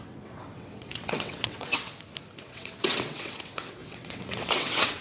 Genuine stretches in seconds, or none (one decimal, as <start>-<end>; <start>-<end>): 1.9-2.4